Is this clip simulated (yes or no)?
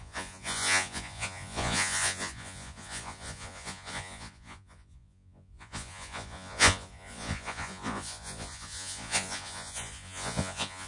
yes